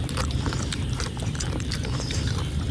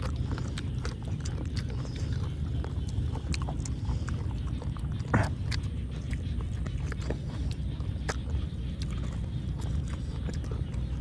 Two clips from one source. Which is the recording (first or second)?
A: second